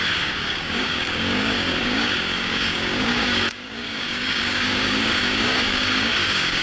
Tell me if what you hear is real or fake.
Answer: fake